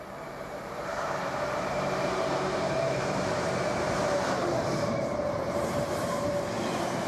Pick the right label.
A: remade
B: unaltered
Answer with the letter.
A